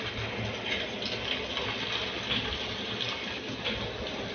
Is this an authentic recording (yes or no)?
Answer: yes